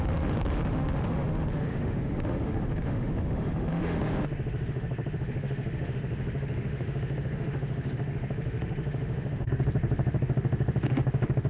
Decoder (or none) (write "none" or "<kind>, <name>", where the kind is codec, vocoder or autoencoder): autoencoder, DAC-VAE